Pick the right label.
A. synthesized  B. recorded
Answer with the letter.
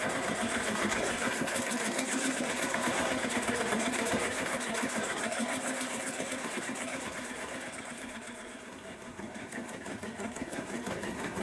A